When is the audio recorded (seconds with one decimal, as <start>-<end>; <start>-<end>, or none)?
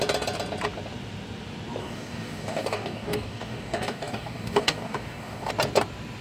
0.0-1.8; 5.5-6.2